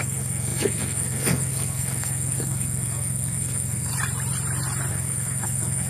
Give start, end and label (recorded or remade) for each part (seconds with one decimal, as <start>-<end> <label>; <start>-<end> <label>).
0.0-3.9 remade; 3.9-4.9 recorded; 4.9-5.9 remade